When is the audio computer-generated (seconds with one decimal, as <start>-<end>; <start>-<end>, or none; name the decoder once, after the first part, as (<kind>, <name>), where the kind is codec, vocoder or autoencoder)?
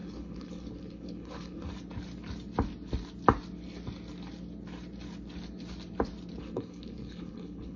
0.0-1.7 (codec, HILCodec); 6.4-7.8